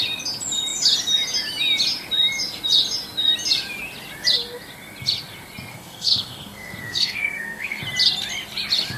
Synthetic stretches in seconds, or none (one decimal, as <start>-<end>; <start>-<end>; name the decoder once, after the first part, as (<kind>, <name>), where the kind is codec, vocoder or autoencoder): 5.7-7.8 (codec, SNAC)